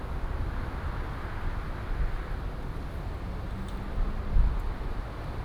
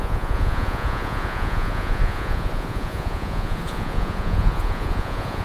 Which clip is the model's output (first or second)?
second